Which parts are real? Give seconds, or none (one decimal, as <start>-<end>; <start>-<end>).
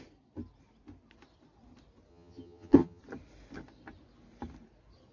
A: 0.0-2.1; 3.0-5.1